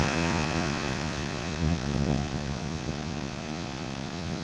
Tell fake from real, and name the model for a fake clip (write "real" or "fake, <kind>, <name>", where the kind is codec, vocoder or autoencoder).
fake, vocoder, Vocos